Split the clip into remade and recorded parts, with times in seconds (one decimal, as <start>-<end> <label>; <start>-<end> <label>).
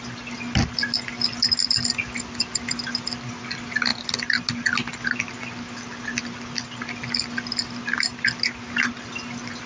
0.0-9.7 recorded